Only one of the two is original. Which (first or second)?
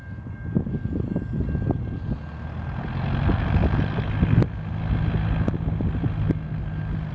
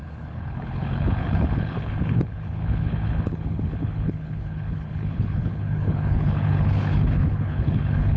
first